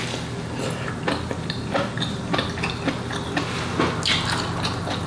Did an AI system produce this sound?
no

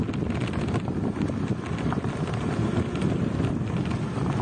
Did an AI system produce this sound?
no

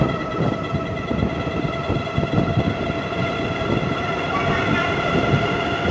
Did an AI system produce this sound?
yes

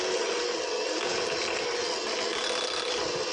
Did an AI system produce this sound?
no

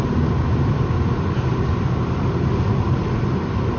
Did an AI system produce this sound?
no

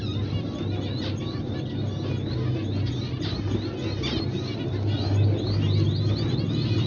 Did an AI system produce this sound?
no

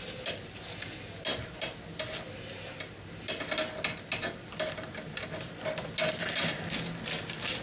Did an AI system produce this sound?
no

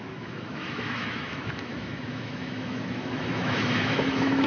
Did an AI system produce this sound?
yes